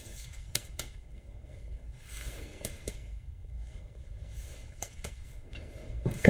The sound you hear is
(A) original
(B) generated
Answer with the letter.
B